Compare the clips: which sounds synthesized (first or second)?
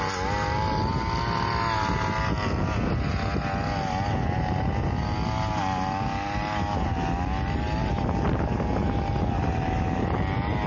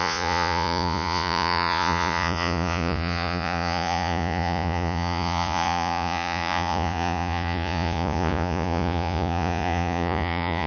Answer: second